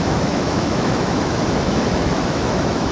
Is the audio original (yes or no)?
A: no